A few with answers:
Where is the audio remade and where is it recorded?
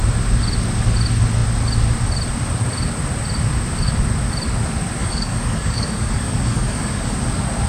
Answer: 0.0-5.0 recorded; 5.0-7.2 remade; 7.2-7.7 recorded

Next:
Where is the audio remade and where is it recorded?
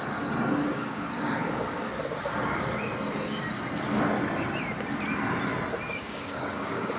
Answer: 0.0-1.9 remade; 1.9-5.9 recorded; 5.9-7.0 remade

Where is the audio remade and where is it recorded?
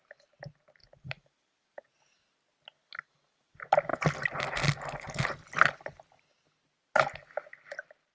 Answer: 0.0-0.8 recorded; 0.8-2.0 remade; 2.0-8.1 recorded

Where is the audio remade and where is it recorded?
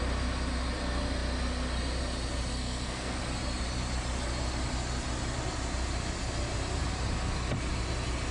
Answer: 0.0-2.5 recorded; 2.5-3.2 remade; 3.2-8.3 recorded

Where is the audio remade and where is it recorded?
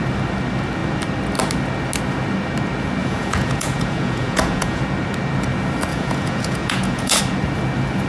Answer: 0.0-3.0 recorded; 3.0-4.8 remade; 4.8-5.9 recorded; 5.9-7.2 remade; 7.2-8.1 recorded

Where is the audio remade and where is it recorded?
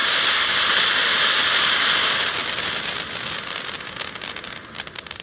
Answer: 0.0-5.2 recorded